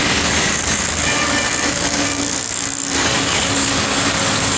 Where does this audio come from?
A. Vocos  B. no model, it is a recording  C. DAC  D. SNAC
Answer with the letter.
C